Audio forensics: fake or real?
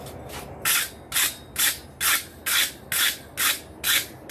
real